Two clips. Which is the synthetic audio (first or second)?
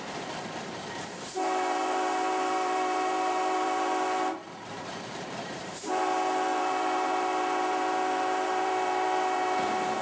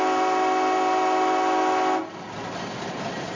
first